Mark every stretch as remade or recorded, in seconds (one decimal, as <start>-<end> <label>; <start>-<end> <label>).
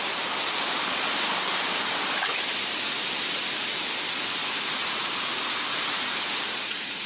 0.0-4.4 recorded; 4.4-5.0 remade; 5.0-5.7 recorded; 5.7-7.1 remade